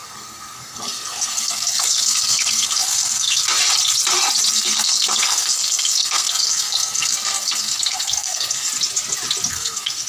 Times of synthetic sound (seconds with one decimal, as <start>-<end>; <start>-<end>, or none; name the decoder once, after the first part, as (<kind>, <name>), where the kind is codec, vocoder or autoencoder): 0.0-3.4 (codec, SNAC); 4.5-8.7; 9.5-10.1

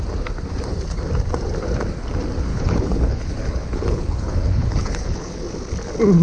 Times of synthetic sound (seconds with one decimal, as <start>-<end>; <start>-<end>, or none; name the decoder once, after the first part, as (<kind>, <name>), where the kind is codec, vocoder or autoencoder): 2.5-5.4 (codec, HILCodec)